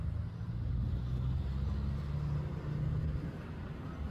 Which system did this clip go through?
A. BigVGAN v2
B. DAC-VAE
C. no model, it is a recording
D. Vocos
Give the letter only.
C